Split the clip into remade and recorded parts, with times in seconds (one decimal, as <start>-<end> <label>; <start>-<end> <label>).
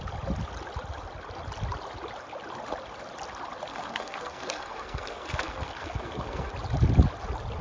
0.0-3.7 recorded; 3.7-6.5 remade; 6.5-7.6 recorded